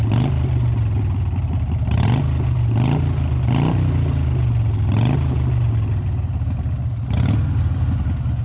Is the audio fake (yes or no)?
no